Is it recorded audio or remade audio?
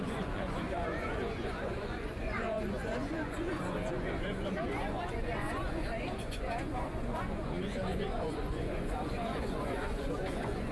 remade